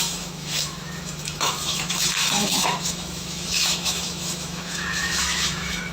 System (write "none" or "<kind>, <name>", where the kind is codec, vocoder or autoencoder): autoencoder, DAC-VAE